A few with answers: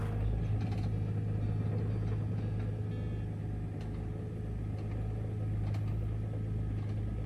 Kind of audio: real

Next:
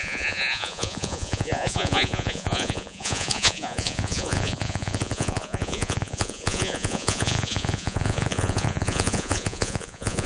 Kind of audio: fake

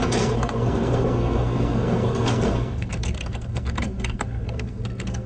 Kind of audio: fake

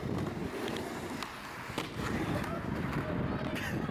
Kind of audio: real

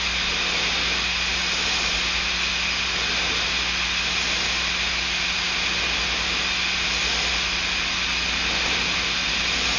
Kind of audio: real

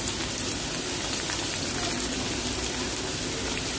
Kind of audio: real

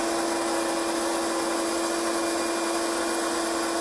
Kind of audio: real